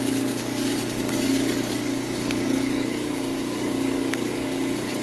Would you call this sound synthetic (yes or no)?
yes